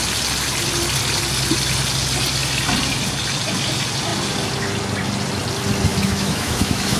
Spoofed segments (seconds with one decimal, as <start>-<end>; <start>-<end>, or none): 5.9-7.0

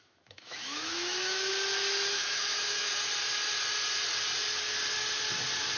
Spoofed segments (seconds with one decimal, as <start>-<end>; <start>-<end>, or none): 0.0-1.5; 2.1-2.9

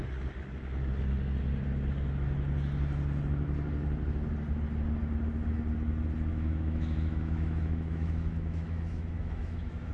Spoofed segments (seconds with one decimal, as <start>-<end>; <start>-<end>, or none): 6.3-9.9

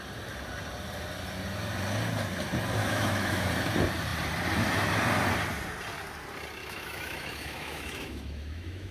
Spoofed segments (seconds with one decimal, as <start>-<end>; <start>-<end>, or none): 2.8-3.5; 6.6-8.9

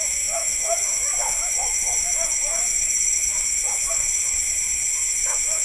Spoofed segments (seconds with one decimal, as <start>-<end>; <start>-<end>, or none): 0.0-5.6

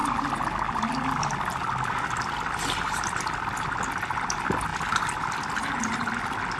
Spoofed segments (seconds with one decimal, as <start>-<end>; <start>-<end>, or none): none